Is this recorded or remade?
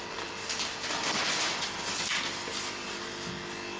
recorded